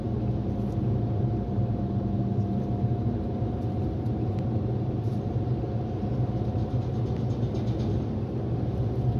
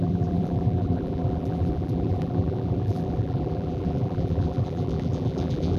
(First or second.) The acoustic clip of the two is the first